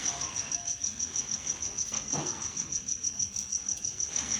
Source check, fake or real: fake